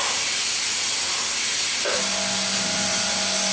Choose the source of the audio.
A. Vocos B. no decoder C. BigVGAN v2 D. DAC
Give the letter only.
B